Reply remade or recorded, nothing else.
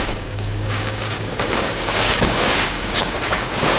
remade